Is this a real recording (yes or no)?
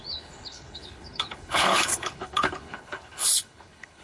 no